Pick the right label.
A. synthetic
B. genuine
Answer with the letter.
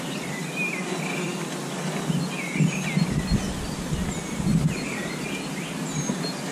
B